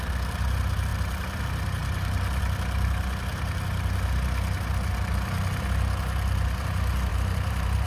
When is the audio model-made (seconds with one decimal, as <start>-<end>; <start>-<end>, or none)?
7.1-7.9